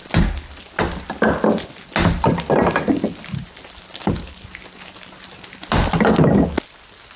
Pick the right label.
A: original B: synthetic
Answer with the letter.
A